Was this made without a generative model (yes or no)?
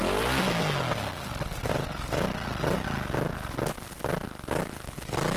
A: yes